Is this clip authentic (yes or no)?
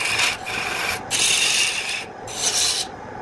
yes